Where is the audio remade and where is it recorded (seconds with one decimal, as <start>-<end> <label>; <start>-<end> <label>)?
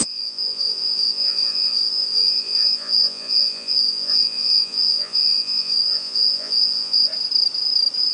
0.0-7.1 remade; 7.1-8.1 recorded